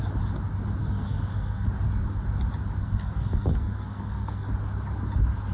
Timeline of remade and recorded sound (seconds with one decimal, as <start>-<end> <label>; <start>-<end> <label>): 0.0-0.8 recorded; 0.8-1.7 remade; 1.7-2.8 recorded; 2.8-4.5 remade; 4.5-5.5 recorded